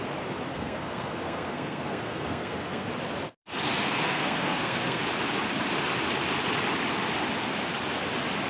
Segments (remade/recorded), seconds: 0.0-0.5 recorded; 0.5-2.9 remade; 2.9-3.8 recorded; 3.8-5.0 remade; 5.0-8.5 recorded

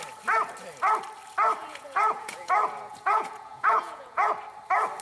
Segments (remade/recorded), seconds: 0.0-1.6 recorded; 1.6-4.3 remade; 4.3-5.0 recorded

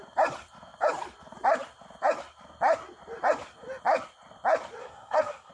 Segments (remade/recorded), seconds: 0.0-4.8 recorded; 4.8-5.5 remade

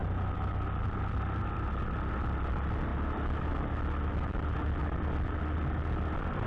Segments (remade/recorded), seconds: 0.0-6.5 recorded

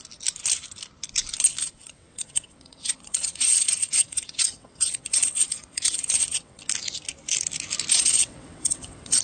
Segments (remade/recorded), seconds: 0.0-1.6 recorded; 1.6-6.6 remade; 6.6-7.9 recorded; 7.9-9.2 remade

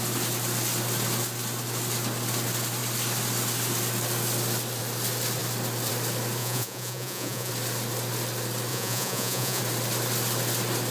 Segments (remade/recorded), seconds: 0.0-6.4 recorded; 6.4-7.5 remade; 7.5-8.7 recorded; 8.7-9.6 remade; 9.6-10.9 recorded

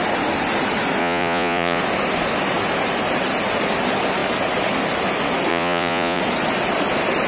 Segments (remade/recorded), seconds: 0.0-1.0 recorded; 1.0-1.8 remade; 1.8-5.5 recorded; 5.5-6.2 remade; 6.2-7.3 recorded

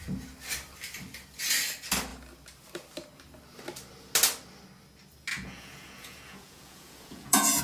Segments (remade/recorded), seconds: 0.0-5.3 recorded; 5.3-7.6 remade